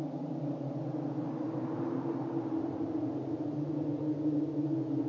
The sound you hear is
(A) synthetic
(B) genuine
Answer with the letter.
B